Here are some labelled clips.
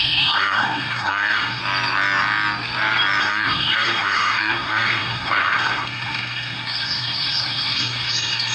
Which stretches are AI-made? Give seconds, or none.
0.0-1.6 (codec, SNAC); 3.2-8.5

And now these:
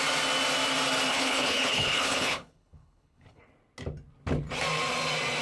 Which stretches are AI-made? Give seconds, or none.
1.1-3.5 (codec, HILCodec)

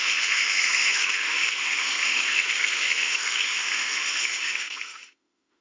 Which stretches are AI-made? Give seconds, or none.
0.0-5.6 (autoencoder, DAC-VAE)

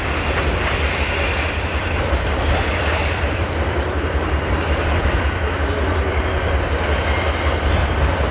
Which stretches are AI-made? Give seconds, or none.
1.8-5.0 (vocoder, BigVGAN v2)

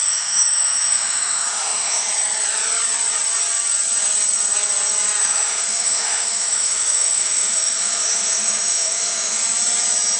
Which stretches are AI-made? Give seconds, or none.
0.0-2.1 (autoencoder, DAC-VAE); 5.2-9.4

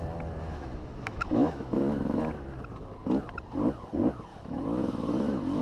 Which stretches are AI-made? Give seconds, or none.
0.4-2.2 (autoencoder, DAC-VAE); 4.3-5.6

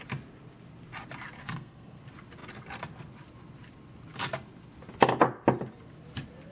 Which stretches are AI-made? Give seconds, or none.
1.4-2.0 (codec, SNAC)

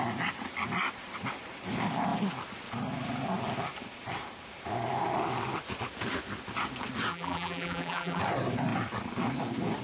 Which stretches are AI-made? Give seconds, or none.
7.1-8.2 (vocoder, BigVGAN v2)